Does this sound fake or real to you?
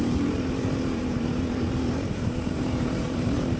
fake